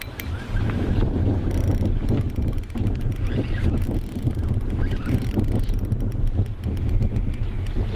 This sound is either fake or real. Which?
real